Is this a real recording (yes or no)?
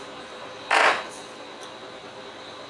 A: no